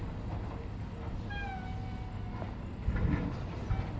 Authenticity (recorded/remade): recorded